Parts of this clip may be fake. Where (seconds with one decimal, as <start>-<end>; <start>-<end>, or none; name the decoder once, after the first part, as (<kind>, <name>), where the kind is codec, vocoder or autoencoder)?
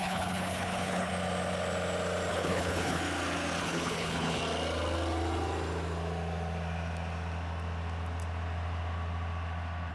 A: 0.0-1.1 (codec, HILCodec); 2.3-3.0; 3.6-4.4